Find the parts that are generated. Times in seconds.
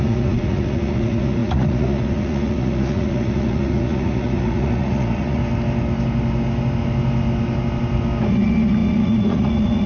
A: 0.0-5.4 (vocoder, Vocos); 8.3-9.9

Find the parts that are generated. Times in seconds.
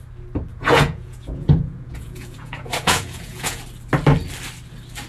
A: 0.5-3.6 (vocoder, Vocos)